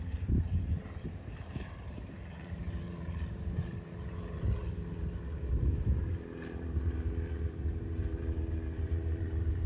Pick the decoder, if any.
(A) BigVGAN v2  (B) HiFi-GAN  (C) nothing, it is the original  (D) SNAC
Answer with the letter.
A